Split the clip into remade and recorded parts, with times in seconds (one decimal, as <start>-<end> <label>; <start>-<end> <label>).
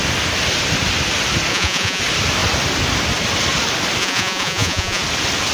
0.0-1.5 recorded; 1.5-2.0 remade; 2.0-4.0 recorded; 4.0-5.0 remade; 5.0-5.5 recorded